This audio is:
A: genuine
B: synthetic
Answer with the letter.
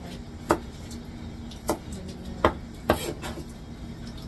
A